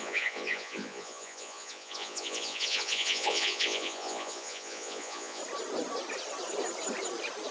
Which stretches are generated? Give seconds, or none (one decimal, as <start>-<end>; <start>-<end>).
0.0-5.4